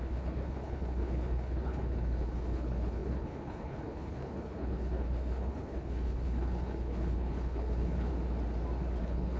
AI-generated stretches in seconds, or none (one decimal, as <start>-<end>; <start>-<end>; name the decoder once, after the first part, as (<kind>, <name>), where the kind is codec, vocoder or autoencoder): 0.0-8.1 (codec, HILCodec); 9.0-9.4